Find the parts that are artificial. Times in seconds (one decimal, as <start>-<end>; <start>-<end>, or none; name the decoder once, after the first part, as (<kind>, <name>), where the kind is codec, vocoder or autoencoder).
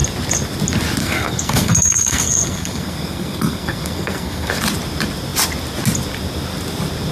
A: 1.0-4.6 (codec, SNAC)